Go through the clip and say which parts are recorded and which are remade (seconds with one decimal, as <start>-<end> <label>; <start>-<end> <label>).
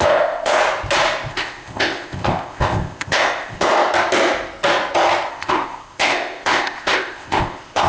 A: 0.0-0.6 remade; 0.6-1.3 recorded; 1.3-3.7 remade; 3.7-5.3 recorded; 5.3-7.9 remade